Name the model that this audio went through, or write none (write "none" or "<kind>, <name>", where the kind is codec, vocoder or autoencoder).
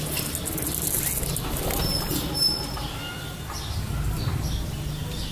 none